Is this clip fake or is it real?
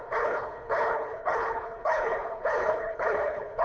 fake